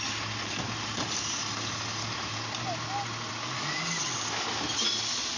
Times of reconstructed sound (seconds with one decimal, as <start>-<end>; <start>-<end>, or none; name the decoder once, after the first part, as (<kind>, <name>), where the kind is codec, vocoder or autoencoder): none